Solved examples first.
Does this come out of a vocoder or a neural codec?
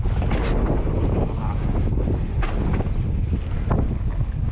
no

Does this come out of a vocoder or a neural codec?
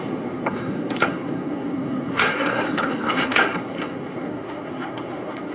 yes